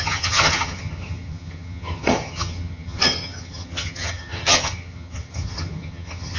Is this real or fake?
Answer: fake